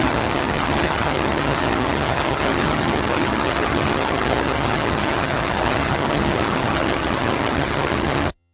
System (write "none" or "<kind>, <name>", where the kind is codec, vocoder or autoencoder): vocoder, HiFi-GAN